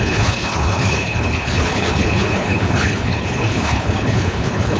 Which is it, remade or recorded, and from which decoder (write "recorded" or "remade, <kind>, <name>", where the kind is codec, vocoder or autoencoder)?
remade, codec, HILCodec